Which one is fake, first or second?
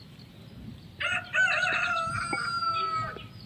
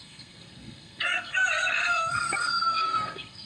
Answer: second